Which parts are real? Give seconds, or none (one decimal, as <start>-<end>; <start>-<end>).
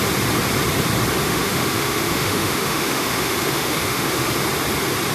0.0-1.2; 4.3-5.1